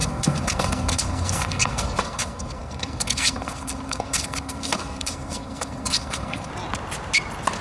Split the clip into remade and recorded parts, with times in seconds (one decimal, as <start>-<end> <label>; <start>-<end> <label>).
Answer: 0.0-6.5 remade; 6.5-7.6 recorded